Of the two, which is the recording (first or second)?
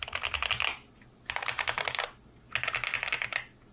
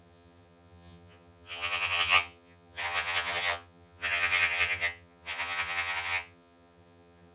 first